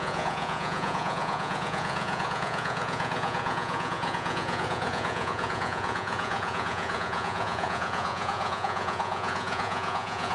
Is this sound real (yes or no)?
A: no